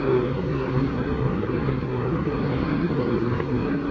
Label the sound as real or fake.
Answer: fake